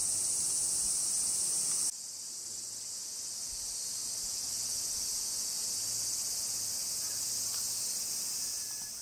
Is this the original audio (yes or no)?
yes